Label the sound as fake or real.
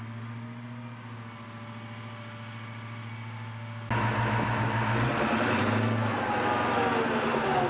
real